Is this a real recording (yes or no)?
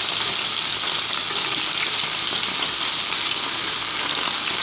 yes